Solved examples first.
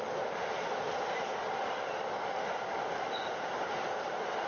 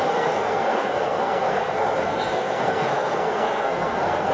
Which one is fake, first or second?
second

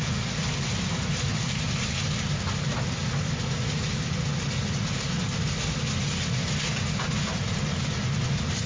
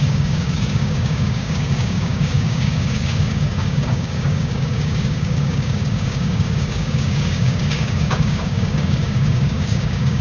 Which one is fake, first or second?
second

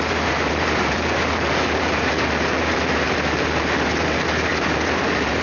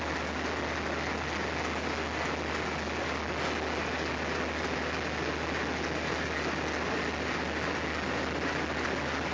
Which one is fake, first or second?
first